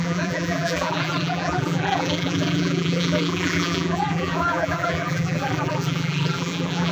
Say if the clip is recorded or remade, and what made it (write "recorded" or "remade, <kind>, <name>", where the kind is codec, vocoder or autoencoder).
remade, vocoder, BigVGAN v2